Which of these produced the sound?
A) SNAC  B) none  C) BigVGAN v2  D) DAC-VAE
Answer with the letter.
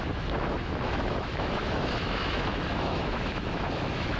D